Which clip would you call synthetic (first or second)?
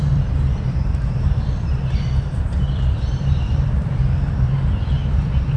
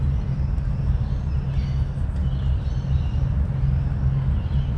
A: first